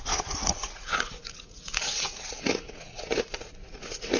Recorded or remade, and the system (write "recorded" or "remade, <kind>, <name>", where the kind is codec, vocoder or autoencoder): remade, vocoder, Vocos